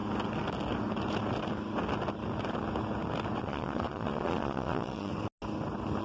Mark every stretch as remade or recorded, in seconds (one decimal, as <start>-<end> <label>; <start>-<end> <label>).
0.0-3.4 recorded; 3.4-5.1 remade; 5.1-6.0 recorded